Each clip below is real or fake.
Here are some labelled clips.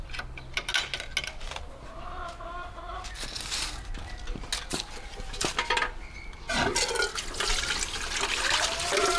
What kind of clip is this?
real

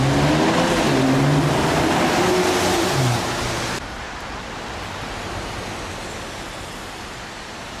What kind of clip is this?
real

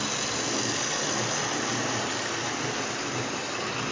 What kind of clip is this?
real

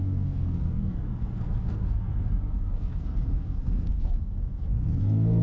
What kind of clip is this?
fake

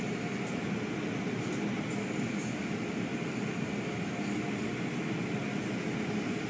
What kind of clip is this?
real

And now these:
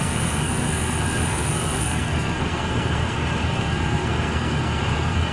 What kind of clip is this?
fake